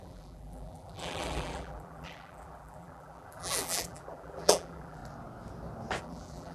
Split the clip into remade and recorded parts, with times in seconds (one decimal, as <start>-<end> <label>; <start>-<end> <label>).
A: 0.0-5.0 remade; 5.0-6.0 recorded; 6.0-6.5 remade

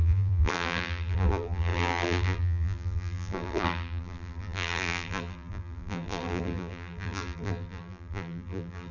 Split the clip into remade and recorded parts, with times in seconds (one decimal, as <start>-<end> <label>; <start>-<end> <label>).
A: 0.0-8.9 remade